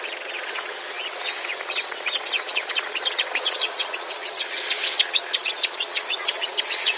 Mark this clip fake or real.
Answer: fake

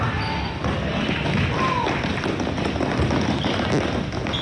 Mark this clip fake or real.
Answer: real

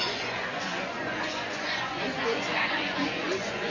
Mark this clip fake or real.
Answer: fake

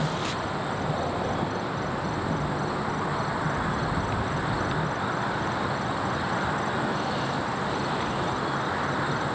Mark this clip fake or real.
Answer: real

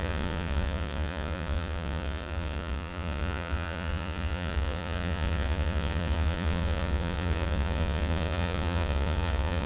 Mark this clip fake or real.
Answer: fake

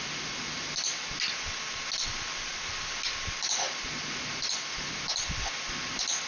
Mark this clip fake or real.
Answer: real